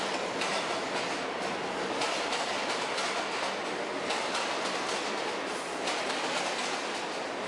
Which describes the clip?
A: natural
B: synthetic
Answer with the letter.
A